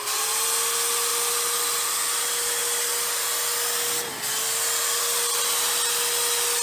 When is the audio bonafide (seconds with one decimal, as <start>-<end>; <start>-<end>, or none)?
0.0-6.6